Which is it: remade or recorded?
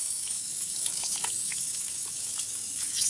remade